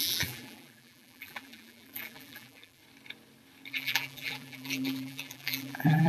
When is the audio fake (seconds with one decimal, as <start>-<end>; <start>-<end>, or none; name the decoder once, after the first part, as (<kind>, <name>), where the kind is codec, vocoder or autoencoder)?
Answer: 0.0-2.8 (vocoder, BigVGAN v2); 3.7-6.1